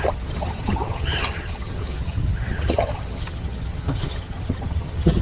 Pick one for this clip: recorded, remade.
remade